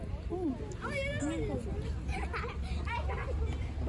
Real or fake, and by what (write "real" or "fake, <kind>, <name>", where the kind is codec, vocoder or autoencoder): real